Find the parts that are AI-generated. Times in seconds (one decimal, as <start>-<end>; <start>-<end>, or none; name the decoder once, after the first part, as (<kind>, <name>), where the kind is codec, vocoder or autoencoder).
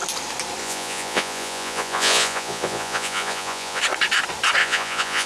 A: 0.6-3.8 (vocoder, Vocos); 4.6-5.3